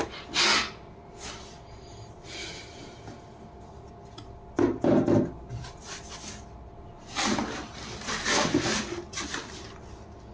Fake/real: real